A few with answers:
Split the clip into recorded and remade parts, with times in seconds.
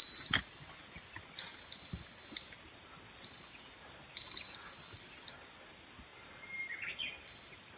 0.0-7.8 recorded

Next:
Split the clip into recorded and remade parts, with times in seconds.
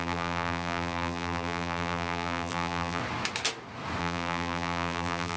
0.0-3.0 remade; 3.0-4.0 recorded; 4.0-5.4 remade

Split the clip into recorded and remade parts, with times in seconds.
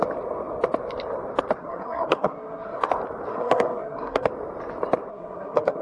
0.0-1.6 recorded; 1.6-2.8 remade; 2.8-3.3 recorded; 3.3-4.3 remade; 4.3-5.1 recorded; 5.1-5.8 remade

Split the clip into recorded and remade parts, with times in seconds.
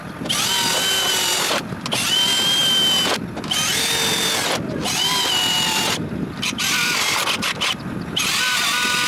0.0-9.1 recorded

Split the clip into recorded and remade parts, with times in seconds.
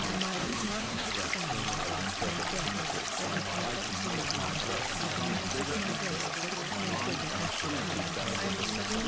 0.0-0.4 recorded; 0.4-1.1 remade; 1.1-9.1 recorded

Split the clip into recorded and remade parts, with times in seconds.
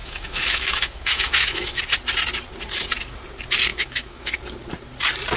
0.0-1.8 remade; 1.8-3.7 recorded; 3.7-4.3 remade; 4.3-5.4 recorded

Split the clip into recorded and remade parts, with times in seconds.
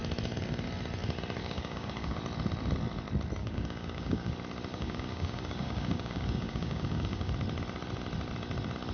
0.0-1.4 recorded; 1.4-2.2 remade; 2.2-3.4 recorded; 3.4-4.3 remade; 4.3-4.7 recorded; 4.7-7.3 remade; 7.3-8.9 recorded